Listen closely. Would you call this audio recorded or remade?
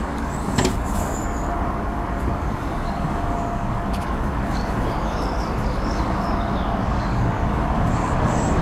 remade